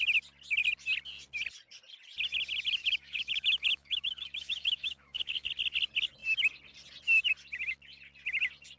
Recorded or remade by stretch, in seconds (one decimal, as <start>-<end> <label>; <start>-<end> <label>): 0.0-2.8 recorded; 2.8-5.5 remade; 5.5-8.8 recorded